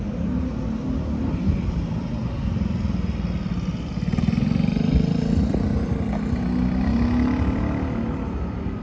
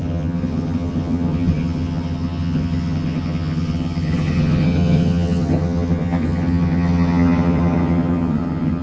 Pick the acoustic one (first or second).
first